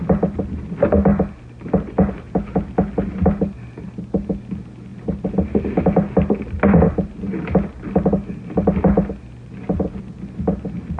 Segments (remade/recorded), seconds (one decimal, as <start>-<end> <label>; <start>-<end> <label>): 0.0-11.0 recorded